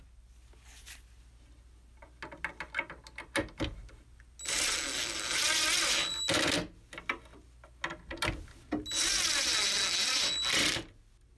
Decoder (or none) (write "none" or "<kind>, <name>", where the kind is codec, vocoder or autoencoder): none